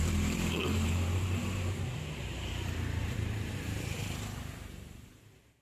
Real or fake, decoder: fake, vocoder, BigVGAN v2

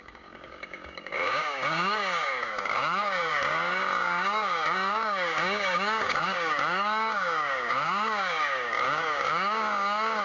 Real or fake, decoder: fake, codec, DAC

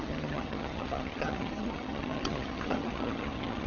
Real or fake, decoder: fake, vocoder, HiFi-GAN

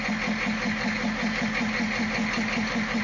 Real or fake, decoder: real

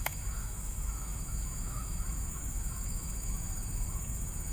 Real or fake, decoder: fake, autoencoder, DAC-VAE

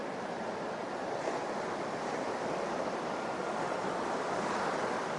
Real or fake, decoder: fake, vocoder, BigVGAN v2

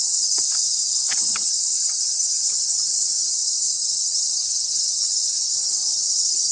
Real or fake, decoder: fake, vocoder, HiFi-GAN